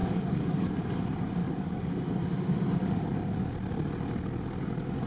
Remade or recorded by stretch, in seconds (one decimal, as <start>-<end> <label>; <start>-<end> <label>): 0.0-0.7 remade; 0.7-1.4 recorded; 1.4-1.9 remade; 1.9-2.8 recorded; 2.8-3.5 remade; 3.5-5.1 recorded